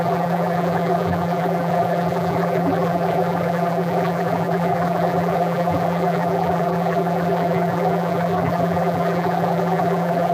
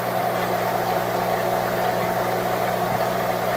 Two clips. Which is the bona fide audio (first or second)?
second